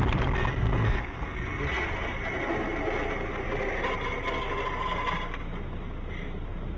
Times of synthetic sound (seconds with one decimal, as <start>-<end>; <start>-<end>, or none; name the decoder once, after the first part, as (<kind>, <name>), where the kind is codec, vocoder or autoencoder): 0.5-1.6 (codec, SNAC)